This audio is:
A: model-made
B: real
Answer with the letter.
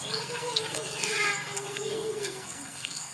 A